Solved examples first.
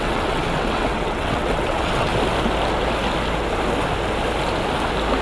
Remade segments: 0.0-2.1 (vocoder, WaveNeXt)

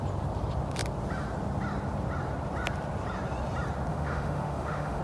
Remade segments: 3.9-5.0 (autoencoder, DAC-VAE)

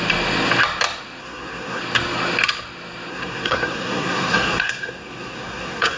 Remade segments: 1.2-1.8 (codec, SNAC); 3.1-6.0